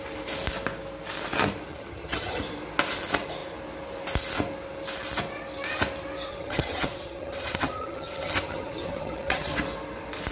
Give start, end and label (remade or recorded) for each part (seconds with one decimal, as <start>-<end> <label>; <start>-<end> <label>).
0.0-1.7 recorded; 1.7-2.4 remade; 2.4-6.3 recorded; 6.3-9.6 remade; 9.6-10.3 recorded